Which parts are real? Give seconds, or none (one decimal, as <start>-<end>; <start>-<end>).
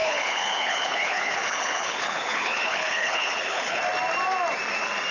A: 3.8-5.1